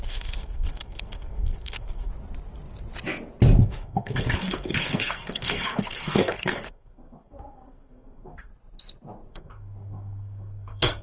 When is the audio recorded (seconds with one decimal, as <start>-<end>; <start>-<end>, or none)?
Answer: 2.1-3.6; 8.5-9.3